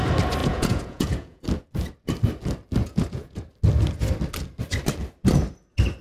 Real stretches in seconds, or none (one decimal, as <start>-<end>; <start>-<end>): 0.0-0.4; 1.4-2.8; 3.4-6.0